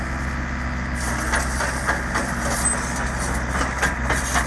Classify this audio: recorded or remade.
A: recorded